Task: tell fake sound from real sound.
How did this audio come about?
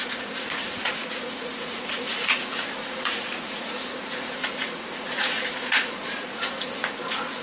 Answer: fake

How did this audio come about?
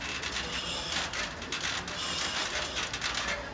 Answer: real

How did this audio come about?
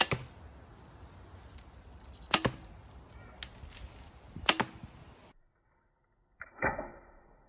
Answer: real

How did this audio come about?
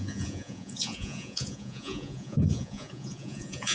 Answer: fake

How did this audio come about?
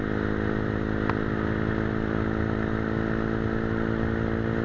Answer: real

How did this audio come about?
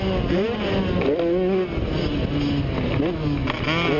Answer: real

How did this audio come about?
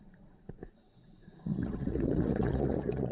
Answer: fake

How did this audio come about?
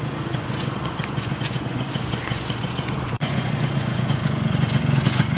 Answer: fake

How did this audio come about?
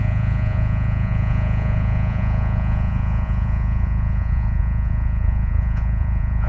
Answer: fake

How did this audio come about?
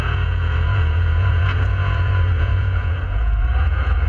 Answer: fake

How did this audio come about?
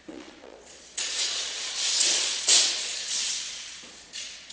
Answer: fake